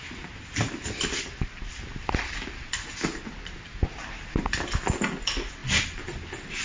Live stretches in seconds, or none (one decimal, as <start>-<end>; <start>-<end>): 0.0-6.6